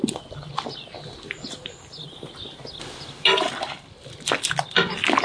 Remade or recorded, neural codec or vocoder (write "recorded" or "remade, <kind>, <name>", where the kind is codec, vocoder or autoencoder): recorded